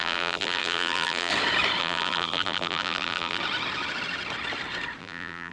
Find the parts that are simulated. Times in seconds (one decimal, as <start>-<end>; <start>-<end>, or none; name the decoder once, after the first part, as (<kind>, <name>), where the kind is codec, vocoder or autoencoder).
0.0-1.3 (vocoder, BigVGAN v2); 1.8-3.4; 5.0-5.5